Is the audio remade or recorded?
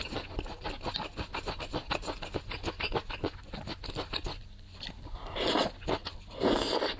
recorded